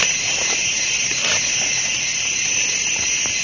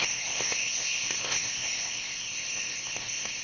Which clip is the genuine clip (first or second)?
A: first